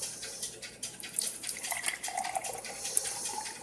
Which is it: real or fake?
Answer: fake